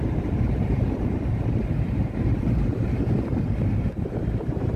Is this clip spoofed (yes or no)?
yes